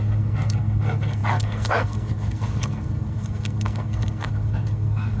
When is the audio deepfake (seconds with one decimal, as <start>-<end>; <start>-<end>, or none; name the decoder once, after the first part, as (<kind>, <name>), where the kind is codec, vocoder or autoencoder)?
0.0-5.2 (codec, SNAC)